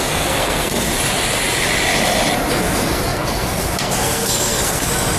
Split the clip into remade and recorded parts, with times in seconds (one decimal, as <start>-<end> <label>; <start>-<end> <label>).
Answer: 0.0-0.9 remade; 0.9-2.5 recorded; 2.5-5.2 remade